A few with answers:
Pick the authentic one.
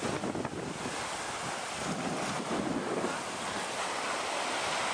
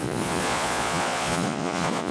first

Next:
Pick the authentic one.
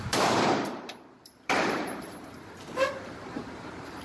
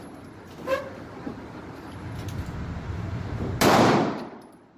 second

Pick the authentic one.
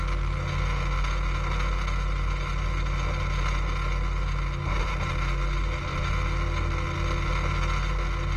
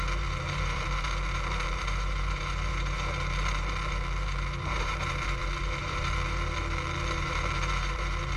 first